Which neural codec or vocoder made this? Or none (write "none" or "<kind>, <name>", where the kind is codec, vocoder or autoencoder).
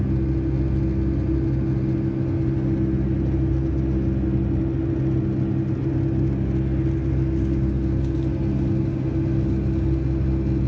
none